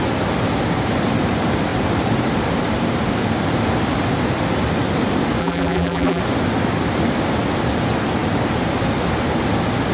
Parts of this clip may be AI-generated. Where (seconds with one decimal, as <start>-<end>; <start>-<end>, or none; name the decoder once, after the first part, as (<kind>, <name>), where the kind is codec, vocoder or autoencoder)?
5.4-6.2 (vocoder, BigVGAN v2)